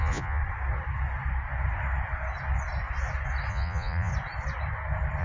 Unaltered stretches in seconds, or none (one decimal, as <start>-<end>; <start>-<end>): 0.4-3.5; 4.1-5.2